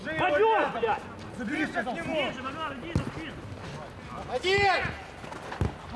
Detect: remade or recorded recorded